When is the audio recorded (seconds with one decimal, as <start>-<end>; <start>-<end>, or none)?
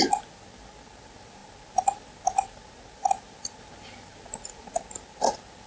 0.0-5.7